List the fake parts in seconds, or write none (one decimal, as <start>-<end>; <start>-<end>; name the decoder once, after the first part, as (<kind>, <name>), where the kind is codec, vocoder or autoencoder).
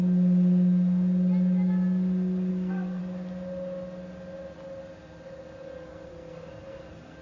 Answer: 2.5-3.0 (codec, SNAC); 5.9-7.2